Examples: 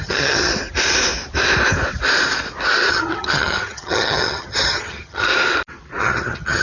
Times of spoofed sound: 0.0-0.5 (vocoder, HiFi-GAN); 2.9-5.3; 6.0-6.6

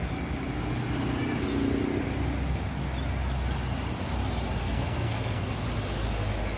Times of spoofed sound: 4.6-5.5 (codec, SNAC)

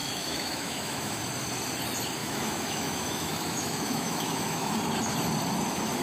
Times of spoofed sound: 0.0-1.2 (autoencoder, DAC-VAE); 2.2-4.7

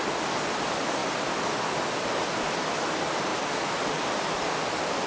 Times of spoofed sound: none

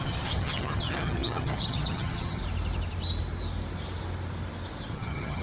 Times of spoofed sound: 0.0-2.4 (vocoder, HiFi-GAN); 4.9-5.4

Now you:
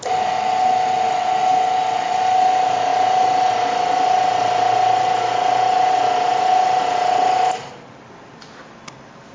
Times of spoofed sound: none

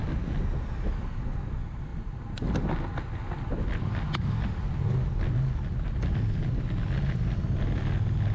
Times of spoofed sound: none